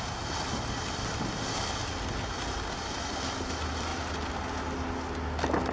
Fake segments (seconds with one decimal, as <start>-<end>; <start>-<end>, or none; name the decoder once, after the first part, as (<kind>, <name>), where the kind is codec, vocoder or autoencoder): none